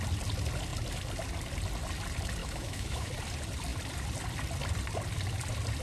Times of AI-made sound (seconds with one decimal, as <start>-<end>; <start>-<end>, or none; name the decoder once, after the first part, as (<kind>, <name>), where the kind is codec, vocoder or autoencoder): 2.4-3.1 (autoencoder, DAC-VAE)

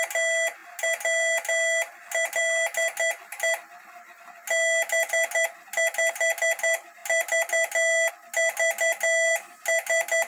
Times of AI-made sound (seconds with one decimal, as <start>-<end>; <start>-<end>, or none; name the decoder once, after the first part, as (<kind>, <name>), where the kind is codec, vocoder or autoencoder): none